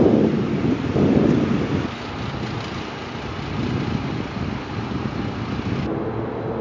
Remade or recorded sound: recorded